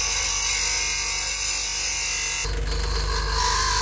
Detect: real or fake real